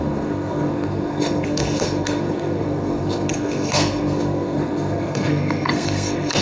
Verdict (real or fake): fake